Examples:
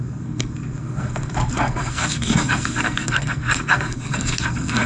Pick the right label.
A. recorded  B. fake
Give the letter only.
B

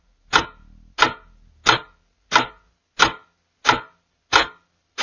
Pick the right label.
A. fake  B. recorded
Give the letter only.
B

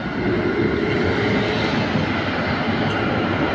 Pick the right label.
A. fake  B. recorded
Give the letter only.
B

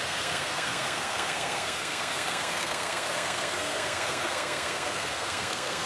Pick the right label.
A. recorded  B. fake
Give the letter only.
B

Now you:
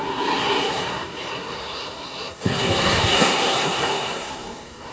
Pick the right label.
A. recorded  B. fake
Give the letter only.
B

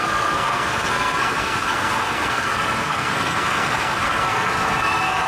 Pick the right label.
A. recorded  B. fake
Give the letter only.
B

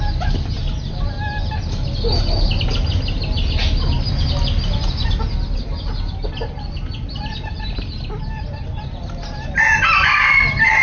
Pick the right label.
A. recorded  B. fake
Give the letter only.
A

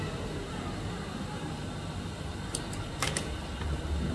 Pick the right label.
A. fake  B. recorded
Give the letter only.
B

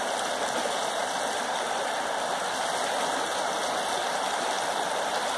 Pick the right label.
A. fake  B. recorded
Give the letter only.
B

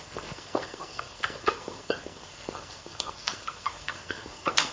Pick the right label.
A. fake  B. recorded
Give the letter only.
A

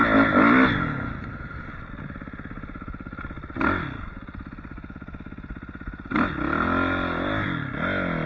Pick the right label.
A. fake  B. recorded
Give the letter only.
B